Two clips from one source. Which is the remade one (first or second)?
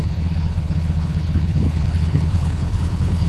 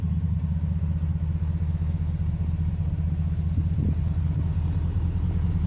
first